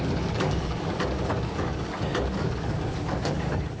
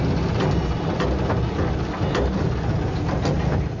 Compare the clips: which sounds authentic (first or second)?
second